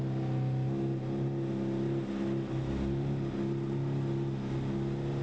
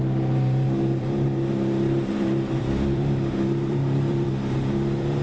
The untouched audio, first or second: first